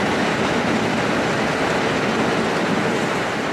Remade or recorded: recorded